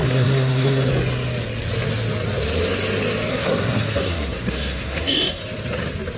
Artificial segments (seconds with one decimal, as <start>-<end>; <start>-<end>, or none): 0.0-0.9; 3.3-5.4